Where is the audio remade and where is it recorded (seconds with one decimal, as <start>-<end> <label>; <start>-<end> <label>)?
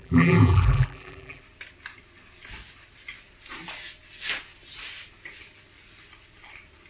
0.0-1.4 remade; 1.4-6.9 recorded